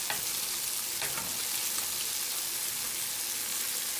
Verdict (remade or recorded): recorded